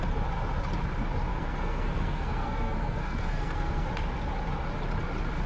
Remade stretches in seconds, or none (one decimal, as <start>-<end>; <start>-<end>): 1.3-3.9